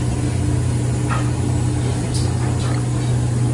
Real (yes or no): yes